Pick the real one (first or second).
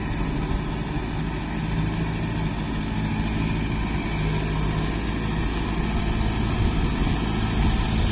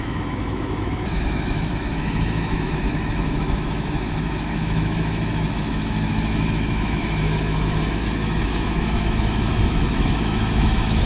first